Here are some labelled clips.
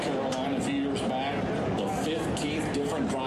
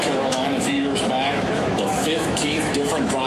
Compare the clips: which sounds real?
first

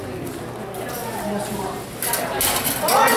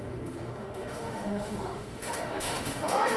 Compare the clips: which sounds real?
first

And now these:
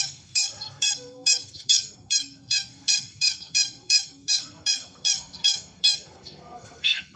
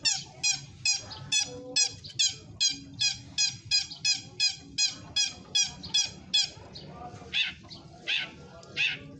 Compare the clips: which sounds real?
second